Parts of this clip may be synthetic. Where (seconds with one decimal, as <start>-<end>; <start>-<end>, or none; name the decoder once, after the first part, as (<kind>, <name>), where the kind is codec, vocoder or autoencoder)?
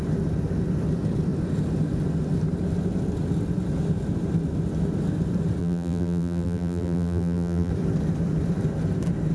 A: 5.6-7.7 (vocoder, BigVGAN v2)